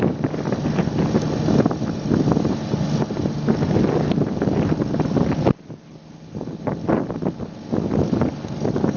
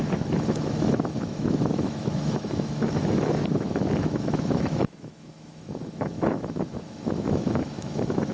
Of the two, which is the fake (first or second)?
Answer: second